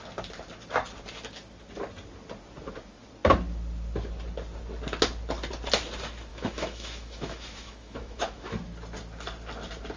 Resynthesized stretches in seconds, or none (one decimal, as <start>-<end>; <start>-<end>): 6.3-8.6